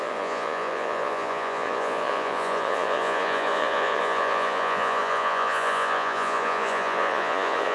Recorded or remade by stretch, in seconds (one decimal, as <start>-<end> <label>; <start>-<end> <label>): 0.0-7.7 remade